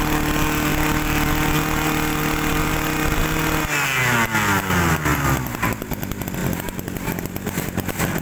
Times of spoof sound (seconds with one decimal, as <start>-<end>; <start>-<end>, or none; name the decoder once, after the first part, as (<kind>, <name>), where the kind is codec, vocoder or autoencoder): none